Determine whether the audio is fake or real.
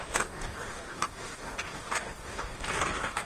fake